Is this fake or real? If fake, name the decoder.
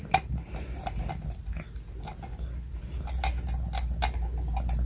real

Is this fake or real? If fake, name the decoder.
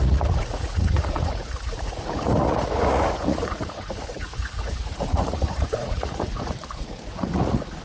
fake, vocoder, Vocos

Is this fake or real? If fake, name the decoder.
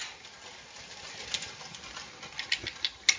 real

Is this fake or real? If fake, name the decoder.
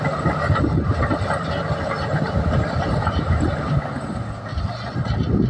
real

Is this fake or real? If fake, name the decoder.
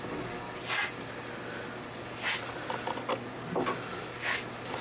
real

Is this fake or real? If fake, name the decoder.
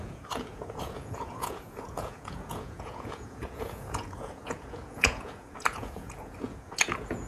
fake, vocoder, Vocos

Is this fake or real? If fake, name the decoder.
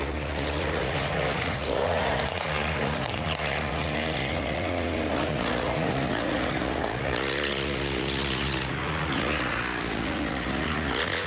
fake, vocoder, Vocos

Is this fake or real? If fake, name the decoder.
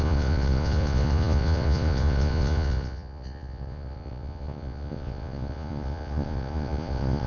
fake, vocoder, Vocos